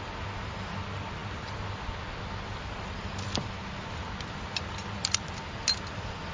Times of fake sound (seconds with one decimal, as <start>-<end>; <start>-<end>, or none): none

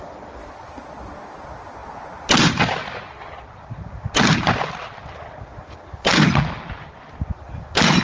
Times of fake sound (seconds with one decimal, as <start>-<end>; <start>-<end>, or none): none